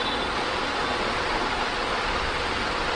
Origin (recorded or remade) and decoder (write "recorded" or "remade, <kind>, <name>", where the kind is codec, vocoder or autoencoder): recorded